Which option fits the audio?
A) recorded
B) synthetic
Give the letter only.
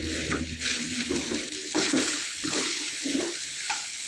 B